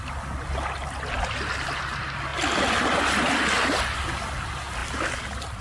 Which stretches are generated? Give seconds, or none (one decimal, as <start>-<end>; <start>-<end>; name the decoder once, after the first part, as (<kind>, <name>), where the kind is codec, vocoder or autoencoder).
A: none